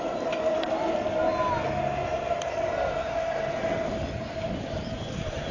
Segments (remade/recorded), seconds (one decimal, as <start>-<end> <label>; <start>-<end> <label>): 0.0-5.5 recorded